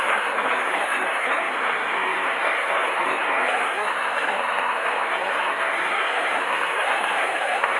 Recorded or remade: remade